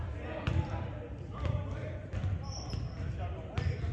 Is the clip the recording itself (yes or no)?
yes